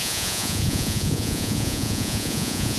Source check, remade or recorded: remade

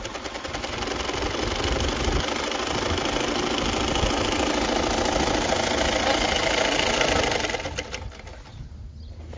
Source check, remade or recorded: recorded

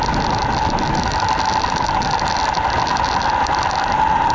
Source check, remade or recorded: recorded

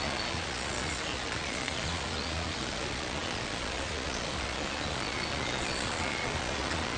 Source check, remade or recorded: remade